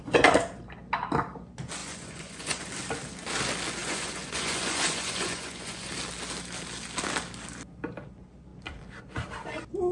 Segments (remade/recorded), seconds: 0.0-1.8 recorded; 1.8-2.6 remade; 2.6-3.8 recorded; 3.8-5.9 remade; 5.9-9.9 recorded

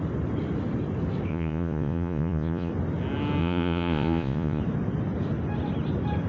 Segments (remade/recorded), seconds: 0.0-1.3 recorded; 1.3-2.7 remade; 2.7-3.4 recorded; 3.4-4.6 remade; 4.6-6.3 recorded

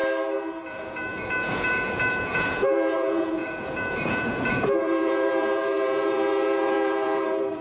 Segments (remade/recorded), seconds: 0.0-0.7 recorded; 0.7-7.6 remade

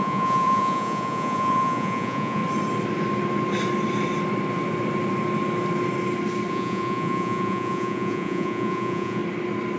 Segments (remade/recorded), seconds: 0.0-2.4 remade; 2.4-6.5 recorded; 6.5-9.2 remade; 9.2-9.8 recorded

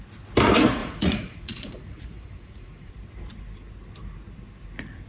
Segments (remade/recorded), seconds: 0.0-0.8 recorded; 0.8-2.9 remade; 2.9-5.1 recorded

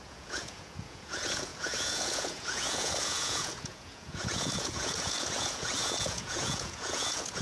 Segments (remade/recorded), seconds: 0.0-7.4 remade